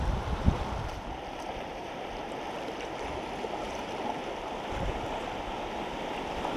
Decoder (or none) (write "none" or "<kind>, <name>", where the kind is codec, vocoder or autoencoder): none